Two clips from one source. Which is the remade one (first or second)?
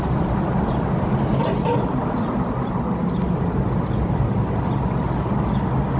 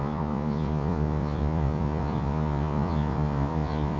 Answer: second